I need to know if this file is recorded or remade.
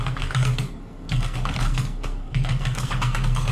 remade